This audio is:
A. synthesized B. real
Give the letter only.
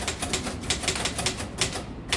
B